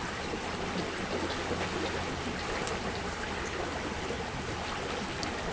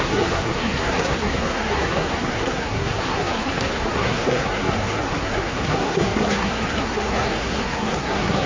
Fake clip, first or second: second